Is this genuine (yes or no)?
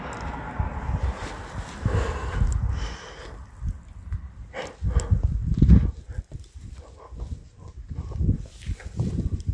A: yes